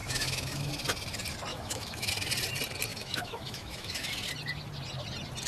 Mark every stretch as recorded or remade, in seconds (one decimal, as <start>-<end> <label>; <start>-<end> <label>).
0.0-0.7 remade; 0.7-1.5 recorded; 1.5-2.1 remade; 2.1-2.9 recorded; 2.9-4.1 remade; 4.1-5.5 recorded